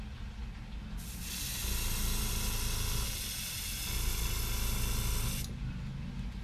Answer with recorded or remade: recorded